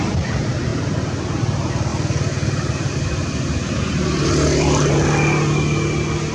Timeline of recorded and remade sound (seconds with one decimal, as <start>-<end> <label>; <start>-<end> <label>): 0.0-0.7 recorded; 0.7-1.4 remade; 1.4-1.9 recorded; 1.9-4.9 remade; 4.9-6.3 recorded